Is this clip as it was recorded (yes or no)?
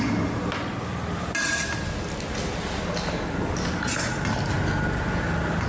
yes